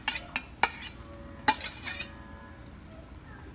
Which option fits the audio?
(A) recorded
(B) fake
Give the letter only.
A